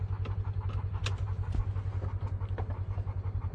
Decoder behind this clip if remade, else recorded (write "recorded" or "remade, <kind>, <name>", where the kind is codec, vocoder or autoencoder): recorded